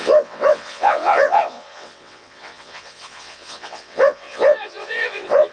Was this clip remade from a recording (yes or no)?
yes